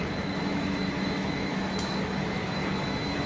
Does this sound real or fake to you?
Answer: fake